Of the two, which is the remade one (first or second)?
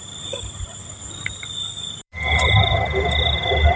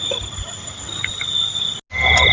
first